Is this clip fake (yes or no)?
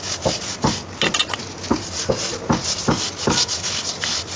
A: no